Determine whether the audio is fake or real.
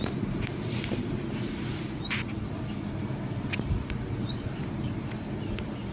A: real